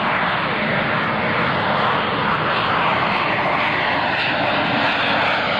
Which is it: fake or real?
real